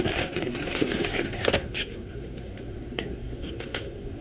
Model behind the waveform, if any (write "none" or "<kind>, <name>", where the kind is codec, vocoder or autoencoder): codec, SNAC